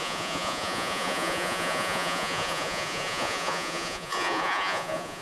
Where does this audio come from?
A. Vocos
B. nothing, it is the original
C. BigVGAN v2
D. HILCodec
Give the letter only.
A